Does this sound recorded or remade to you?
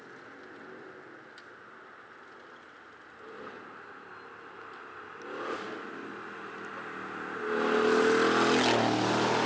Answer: recorded